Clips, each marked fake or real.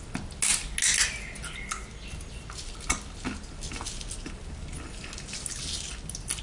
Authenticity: real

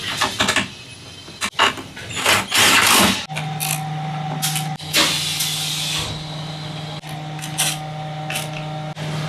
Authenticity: real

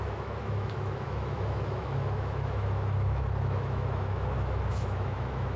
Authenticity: fake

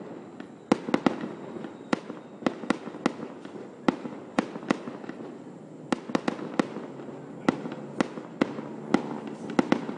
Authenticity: real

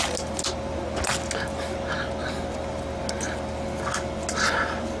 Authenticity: real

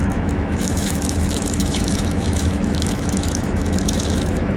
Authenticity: fake